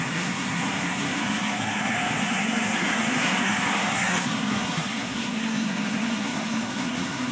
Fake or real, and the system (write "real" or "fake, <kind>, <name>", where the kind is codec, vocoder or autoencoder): fake, codec, SNAC